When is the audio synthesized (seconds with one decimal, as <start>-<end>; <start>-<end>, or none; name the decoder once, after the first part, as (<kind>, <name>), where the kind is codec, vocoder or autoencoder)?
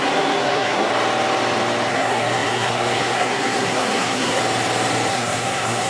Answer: 0.0-0.9 (codec, SNAC); 1.9-4.4; 5.1-5.9